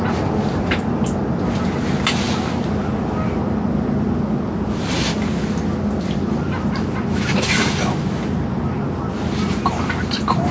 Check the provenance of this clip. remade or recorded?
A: recorded